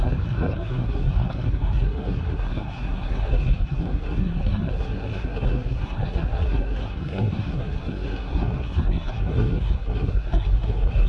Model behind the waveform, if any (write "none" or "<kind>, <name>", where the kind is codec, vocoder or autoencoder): codec, SNAC